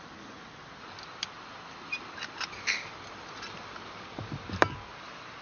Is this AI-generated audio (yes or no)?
no